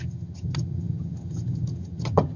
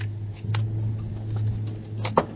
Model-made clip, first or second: first